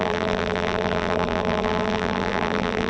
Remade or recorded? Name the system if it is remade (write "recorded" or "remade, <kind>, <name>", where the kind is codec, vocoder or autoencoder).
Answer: remade, vocoder, BigVGAN v2